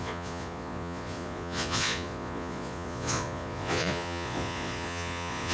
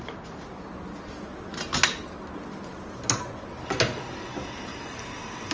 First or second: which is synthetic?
first